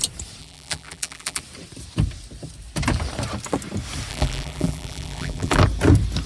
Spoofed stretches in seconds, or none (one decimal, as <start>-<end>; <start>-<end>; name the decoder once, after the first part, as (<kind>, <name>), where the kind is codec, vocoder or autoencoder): 0.4-1.4 (vocoder, BigVGAN v2); 4.1-5.6